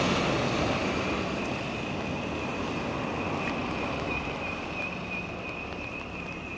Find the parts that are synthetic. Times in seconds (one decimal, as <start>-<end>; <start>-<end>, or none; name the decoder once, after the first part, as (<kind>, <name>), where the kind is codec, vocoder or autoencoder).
0.8-1.7 (vocoder, BigVGAN v2); 3.6-6.6